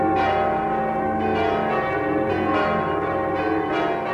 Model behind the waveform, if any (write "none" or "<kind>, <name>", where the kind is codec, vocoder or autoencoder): none